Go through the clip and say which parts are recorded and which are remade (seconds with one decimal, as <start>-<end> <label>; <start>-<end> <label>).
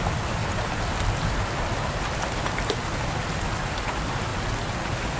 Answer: 0.0-0.4 remade; 0.4-3.5 recorded; 3.5-5.2 remade